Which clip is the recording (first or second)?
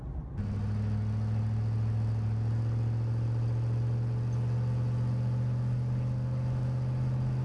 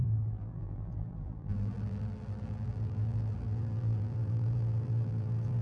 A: first